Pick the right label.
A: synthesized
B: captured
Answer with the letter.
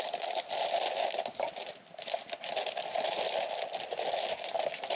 B